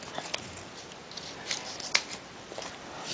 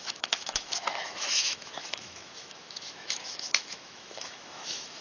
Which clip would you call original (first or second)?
first